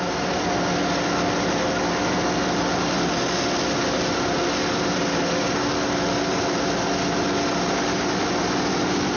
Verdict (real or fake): real